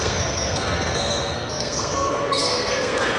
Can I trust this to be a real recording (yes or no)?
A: no